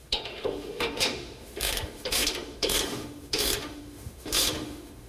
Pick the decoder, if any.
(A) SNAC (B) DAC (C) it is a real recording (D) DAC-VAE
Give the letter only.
D